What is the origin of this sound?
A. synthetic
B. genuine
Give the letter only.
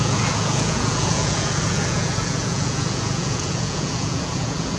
A